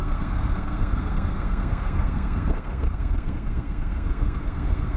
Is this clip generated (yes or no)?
yes